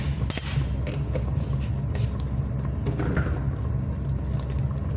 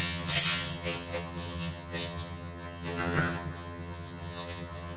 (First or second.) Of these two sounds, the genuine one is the first